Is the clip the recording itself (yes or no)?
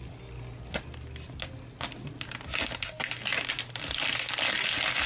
yes